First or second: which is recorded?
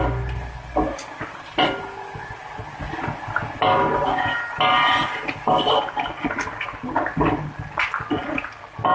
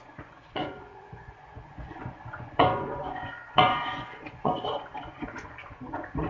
first